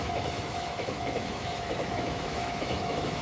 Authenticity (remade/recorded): remade